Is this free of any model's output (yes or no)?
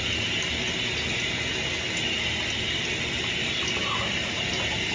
yes